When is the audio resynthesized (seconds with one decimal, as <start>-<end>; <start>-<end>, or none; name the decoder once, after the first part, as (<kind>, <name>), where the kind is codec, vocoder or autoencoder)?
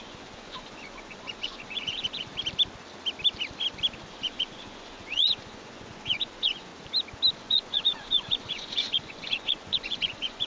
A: 0.0-2.3 (vocoder, Vocos); 4.1-6.7; 7.3-10.5